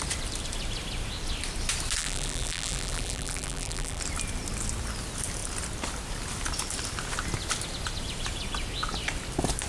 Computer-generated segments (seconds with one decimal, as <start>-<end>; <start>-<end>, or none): 2.0-4.0